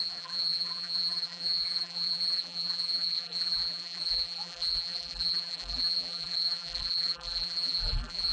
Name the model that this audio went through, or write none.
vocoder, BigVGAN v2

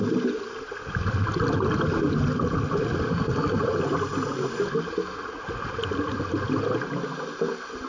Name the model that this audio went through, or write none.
none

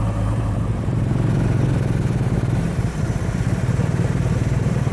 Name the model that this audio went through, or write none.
vocoder, BigVGAN v2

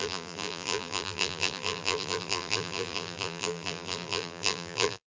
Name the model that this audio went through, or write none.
vocoder, BigVGAN v2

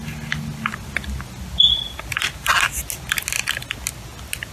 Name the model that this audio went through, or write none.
none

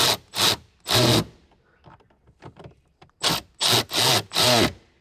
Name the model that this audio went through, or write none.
none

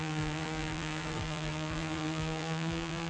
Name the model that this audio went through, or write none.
vocoder, BigVGAN v2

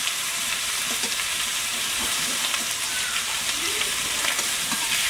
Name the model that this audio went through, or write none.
vocoder, BigVGAN v2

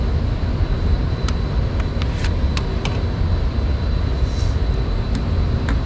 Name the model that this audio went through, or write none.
none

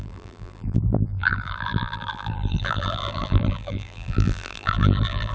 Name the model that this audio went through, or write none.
vocoder, BigVGAN v2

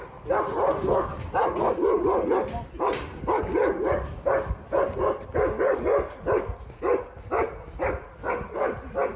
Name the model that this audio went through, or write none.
none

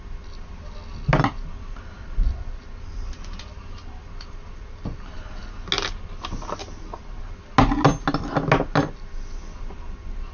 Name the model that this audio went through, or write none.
none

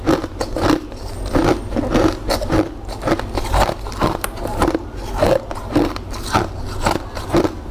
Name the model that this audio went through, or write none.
none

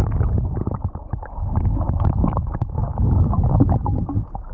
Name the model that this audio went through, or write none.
none